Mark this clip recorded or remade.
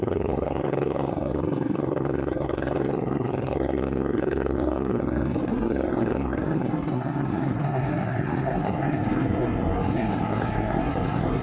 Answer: remade